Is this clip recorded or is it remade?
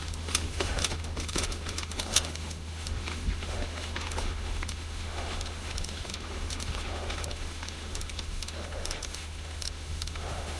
remade